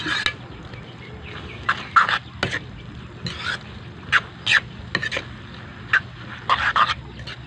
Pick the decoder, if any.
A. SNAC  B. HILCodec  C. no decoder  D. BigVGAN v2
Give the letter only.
C